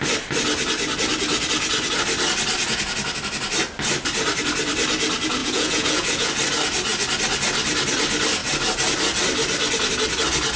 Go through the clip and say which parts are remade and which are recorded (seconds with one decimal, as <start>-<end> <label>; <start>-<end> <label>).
0.0-5.4 recorded; 5.4-6.3 remade; 6.3-10.6 recorded